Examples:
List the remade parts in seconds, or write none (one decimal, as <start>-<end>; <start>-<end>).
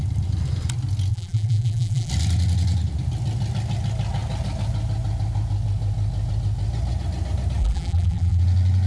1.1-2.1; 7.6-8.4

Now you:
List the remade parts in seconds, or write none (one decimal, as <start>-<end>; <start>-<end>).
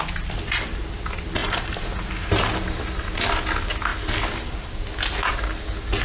1.4-2.3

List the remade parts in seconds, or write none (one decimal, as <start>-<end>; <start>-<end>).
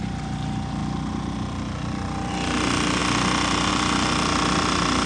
none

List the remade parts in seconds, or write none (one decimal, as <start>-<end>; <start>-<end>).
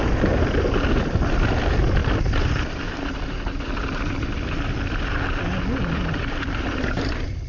1.0-2.0; 6.4-7.5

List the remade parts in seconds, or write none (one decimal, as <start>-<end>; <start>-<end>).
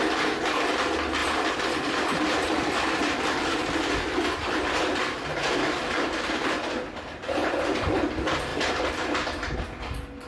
1.2-3.9; 5.3-6.6; 7.4-8.0; 8.5-9.6